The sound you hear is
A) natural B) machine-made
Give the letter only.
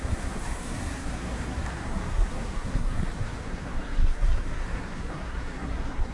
B